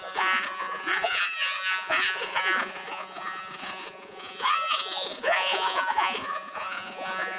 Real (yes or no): no